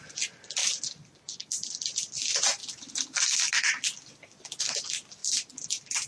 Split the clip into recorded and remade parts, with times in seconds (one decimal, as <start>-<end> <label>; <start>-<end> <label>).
0.0-0.6 recorded; 0.6-1.7 remade; 1.7-5.2 recorded; 5.2-6.1 remade